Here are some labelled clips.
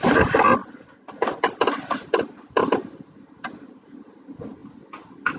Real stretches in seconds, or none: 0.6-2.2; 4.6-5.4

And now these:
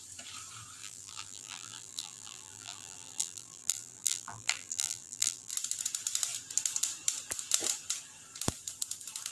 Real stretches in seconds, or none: 0.0-0.8; 5.5-9.3

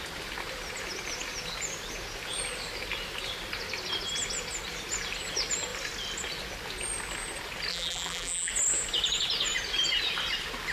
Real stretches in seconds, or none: 0.0-7.7; 8.5-10.7